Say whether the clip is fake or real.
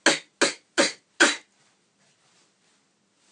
real